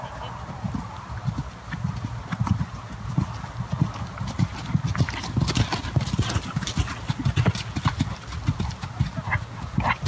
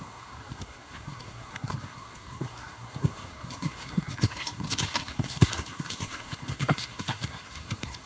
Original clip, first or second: first